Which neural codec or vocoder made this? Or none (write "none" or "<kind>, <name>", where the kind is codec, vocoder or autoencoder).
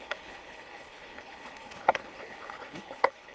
codec, HILCodec